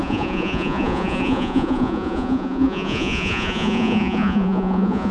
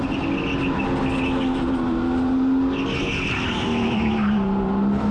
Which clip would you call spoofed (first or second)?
first